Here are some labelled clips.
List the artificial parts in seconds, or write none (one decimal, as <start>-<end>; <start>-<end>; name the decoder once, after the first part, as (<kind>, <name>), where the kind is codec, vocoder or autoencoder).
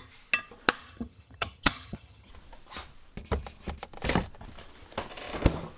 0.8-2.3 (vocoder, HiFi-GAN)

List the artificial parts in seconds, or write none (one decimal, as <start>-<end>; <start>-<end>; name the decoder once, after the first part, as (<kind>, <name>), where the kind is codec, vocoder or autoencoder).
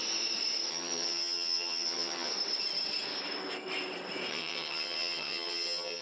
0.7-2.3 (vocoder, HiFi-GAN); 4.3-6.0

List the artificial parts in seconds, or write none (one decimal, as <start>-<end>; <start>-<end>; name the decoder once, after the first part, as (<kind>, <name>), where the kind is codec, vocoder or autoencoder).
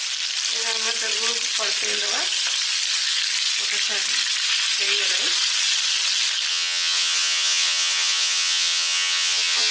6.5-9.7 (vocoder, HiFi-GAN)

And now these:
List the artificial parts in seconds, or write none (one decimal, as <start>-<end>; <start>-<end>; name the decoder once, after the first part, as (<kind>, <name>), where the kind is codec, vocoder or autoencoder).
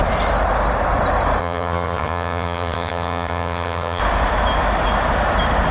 1.4-4.0 (vocoder, HiFi-GAN)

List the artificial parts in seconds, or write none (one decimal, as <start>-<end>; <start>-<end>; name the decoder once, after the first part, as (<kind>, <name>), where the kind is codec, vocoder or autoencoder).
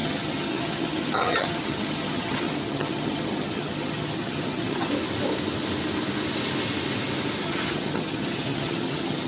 0.0-4.9 (vocoder, HiFi-GAN); 7.4-9.3